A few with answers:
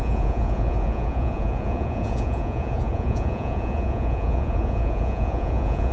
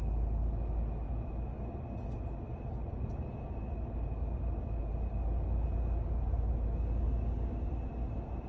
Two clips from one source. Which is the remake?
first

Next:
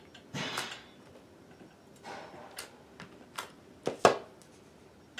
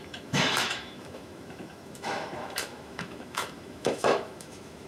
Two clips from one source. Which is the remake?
second